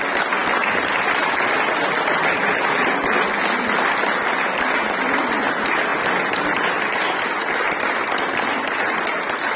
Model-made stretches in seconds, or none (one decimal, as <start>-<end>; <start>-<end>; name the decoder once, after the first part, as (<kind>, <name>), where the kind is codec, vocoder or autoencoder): none